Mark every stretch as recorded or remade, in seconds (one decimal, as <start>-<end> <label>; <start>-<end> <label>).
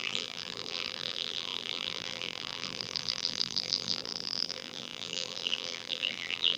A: 0.0-6.6 remade